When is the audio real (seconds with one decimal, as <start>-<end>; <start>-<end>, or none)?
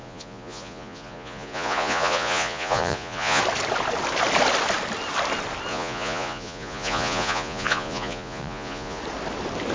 3.4-5.7; 9.0-9.7